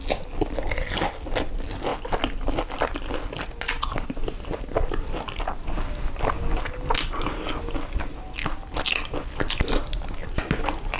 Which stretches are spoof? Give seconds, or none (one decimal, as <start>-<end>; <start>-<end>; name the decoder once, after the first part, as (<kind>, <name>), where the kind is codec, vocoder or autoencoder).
1.9-5.4 (vocoder, BigVGAN v2)